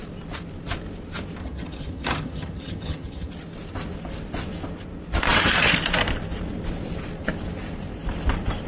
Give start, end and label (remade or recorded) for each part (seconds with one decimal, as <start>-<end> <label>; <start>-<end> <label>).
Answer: 0.0-1.4 recorded; 1.4-3.3 remade; 3.3-8.7 recorded

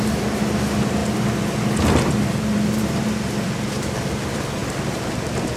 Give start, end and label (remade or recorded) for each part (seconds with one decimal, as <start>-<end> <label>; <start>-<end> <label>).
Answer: 0.0-5.6 recorded

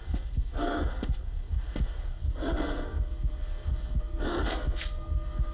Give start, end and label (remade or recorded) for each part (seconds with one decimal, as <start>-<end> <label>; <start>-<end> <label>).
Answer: 0.0-5.5 remade

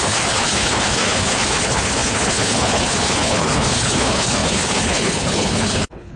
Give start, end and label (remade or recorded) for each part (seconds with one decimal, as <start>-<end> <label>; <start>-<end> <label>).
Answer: 0.0-6.2 remade

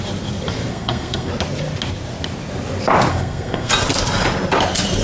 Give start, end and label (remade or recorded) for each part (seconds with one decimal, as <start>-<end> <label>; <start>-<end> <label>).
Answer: 0.0-0.7 recorded; 0.7-1.3 remade; 1.3-3.1 recorded; 3.1-3.7 remade; 3.7-5.0 recorded

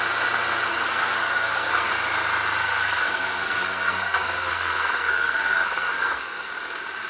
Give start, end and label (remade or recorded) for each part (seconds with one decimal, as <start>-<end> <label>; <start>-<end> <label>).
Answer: 0.0-0.7 recorded; 0.7-1.9 remade; 1.9-2.6 recorded; 2.6-6.5 remade; 6.5-7.1 recorded